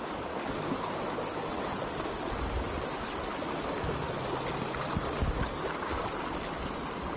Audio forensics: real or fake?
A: real